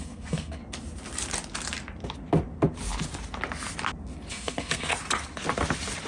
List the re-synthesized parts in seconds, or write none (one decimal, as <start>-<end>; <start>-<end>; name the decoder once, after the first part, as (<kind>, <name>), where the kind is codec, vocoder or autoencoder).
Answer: 0.0-0.6 (codec, SNAC); 4.3-4.9